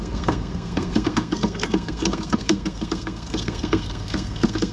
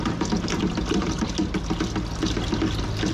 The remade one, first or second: first